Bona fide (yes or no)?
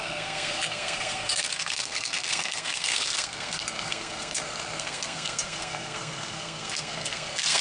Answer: no